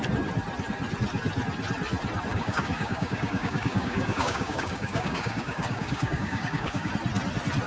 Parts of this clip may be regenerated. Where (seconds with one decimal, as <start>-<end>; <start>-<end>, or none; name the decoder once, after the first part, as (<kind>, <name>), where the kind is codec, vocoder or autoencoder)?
2.3-6.9 (codec, DAC)